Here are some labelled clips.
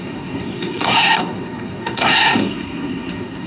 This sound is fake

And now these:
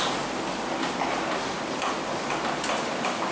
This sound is real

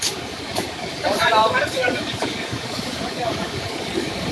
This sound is fake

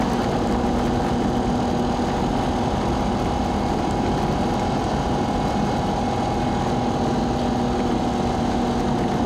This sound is real